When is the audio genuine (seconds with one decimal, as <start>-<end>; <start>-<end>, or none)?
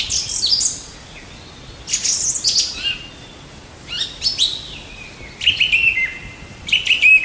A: 0.0-7.2